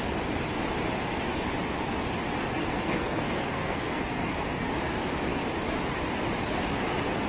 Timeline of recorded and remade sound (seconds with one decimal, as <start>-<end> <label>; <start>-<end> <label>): 0.0-2.6 recorded; 2.6-4.7 remade; 4.7-7.3 recorded